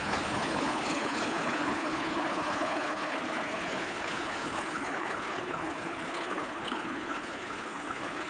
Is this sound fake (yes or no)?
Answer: yes